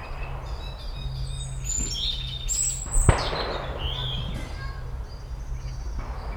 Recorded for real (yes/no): yes